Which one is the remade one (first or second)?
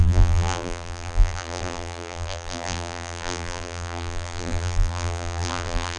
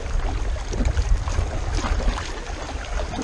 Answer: first